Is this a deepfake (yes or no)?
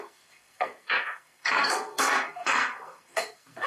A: yes